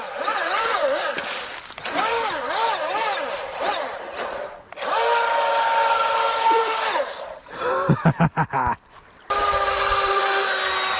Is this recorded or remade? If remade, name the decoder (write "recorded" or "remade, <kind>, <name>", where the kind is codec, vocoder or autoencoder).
recorded